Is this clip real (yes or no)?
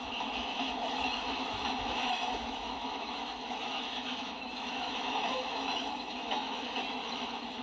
no